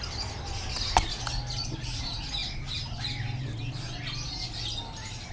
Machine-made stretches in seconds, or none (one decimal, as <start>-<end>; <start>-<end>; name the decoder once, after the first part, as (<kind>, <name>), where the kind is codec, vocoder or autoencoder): none